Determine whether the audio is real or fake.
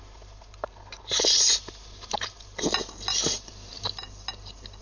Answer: real